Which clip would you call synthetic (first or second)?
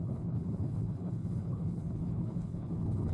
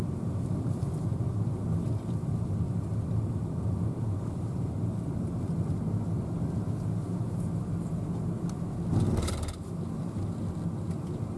first